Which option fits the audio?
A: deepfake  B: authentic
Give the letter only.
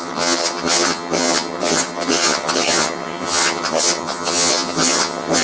A